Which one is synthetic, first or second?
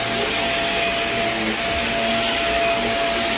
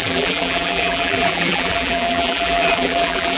second